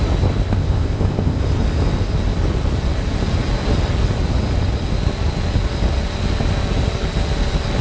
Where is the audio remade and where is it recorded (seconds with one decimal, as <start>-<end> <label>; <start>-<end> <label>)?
0.0-0.5 recorded; 0.5-1.4 remade; 1.4-7.8 recorded